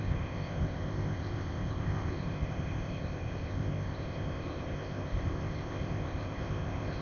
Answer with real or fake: fake